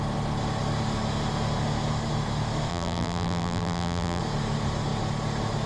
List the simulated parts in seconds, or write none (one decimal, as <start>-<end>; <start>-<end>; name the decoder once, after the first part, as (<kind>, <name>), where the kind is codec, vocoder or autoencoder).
2.7-4.2 (vocoder, BigVGAN v2)